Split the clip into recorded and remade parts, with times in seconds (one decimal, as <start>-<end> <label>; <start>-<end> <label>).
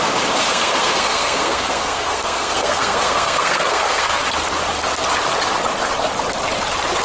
0.0-0.4 recorded; 0.4-4.2 remade; 4.2-7.0 recorded